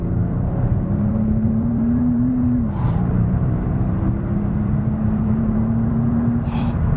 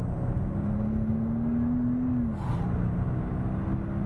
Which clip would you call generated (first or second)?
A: first